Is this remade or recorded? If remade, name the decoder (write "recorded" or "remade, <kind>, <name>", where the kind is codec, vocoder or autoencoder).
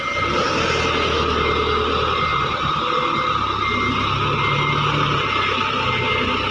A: recorded